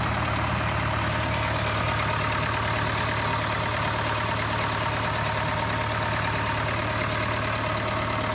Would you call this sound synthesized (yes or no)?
no